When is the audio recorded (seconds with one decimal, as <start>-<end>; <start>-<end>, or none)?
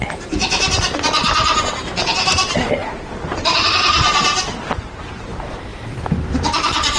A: 1.2-2.2